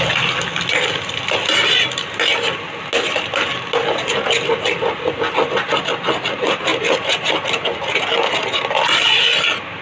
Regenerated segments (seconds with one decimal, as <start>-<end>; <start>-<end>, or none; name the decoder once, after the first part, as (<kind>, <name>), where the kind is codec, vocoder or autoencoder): none